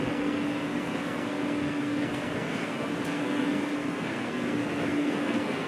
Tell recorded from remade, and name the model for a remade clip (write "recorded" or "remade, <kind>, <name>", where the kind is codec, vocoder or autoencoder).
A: remade, codec, SNAC